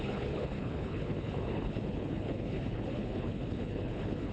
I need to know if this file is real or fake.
fake